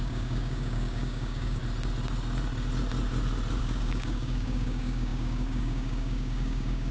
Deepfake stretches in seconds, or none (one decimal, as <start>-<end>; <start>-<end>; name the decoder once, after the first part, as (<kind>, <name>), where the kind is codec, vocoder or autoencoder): 0.0-1.6 (codec, DAC); 3.6-6.9